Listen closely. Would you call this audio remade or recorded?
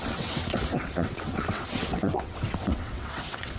remade